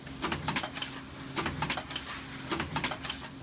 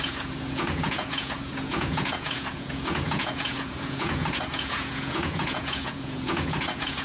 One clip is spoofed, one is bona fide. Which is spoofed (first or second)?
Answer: second